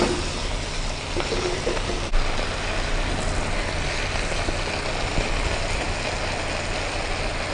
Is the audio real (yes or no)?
yes